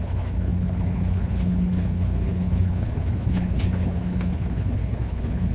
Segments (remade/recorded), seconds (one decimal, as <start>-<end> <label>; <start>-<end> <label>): 0.0-5.5 remade